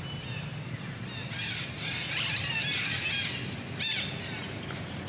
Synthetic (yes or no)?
no